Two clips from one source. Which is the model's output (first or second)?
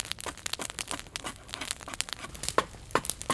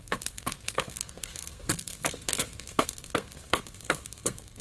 second